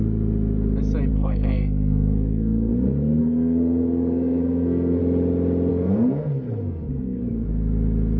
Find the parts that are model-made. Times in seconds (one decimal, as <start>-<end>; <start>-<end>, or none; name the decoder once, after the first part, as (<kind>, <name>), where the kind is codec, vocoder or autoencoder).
1.1-2.7 (codec, SNAC); 3.2-5.0; 5.7-7.2